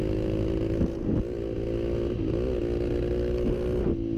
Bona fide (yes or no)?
yes